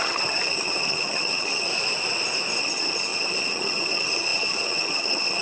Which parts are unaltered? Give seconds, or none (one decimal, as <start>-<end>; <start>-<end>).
1.7-2.6